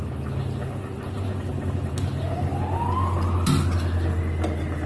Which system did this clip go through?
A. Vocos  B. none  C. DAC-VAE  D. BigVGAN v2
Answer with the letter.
B